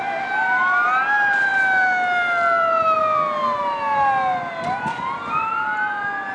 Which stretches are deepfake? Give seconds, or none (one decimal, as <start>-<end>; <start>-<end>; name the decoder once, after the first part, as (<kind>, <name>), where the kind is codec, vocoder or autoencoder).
none